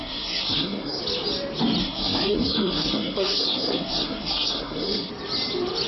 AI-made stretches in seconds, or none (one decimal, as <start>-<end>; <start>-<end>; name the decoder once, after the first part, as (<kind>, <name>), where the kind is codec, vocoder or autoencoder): 0.0-1.0 (codec, SNAC); 1.8-5.1